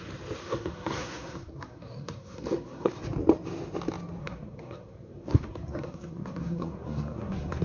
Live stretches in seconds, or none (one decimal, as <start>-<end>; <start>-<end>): 0.0-0.4; 3.0-4.2